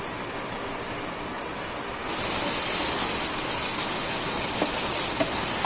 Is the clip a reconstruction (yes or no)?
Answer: no